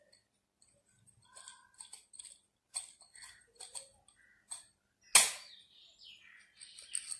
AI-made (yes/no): no